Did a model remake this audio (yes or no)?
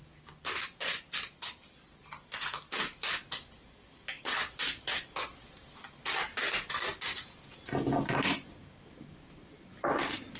no